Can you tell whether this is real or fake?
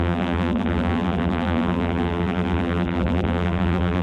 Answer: fake